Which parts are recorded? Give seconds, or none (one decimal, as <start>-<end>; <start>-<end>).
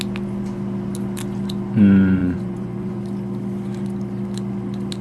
0.0-2.2; 3.0-5.0